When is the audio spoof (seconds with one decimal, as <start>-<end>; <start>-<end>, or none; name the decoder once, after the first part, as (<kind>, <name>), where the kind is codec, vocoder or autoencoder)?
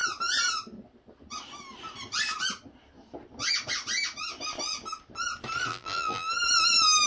5.7-6.3 (vocoder, BigVGAN v2)